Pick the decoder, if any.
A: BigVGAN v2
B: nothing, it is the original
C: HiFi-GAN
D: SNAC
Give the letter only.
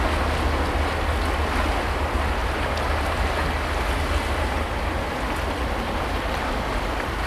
B